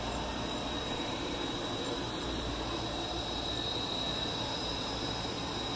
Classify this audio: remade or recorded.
remade